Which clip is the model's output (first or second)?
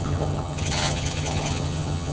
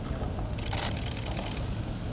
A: first